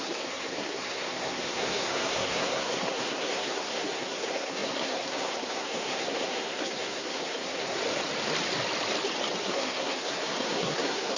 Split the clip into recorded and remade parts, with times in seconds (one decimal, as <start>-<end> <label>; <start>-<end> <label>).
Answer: 0.0-7.8 remade; 7.8-9.4 recorded; 9.4-11.2 remade